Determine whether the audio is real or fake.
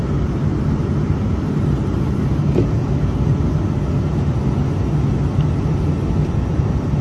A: real